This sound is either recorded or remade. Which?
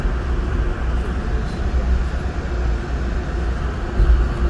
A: recorded